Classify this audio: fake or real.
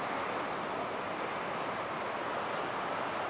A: real